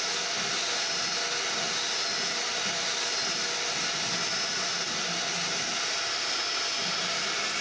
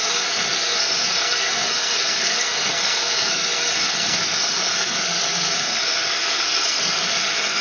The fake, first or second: second